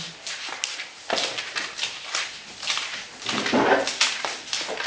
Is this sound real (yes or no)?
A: yes